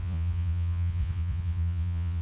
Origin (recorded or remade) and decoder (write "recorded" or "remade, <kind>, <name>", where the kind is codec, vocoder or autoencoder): remade, vocoder, Vocos